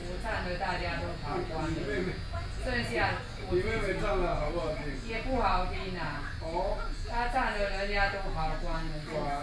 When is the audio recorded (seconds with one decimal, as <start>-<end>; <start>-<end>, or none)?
0.0-9.4